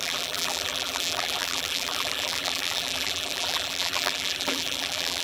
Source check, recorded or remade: remade